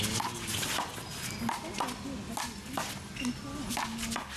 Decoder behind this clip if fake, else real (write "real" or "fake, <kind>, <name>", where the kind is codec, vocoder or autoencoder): real